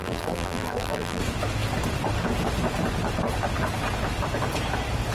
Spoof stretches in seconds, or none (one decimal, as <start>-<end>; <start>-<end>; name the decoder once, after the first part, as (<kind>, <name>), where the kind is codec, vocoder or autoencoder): 0.0-1.2 (vocoder, BigVGAN v2)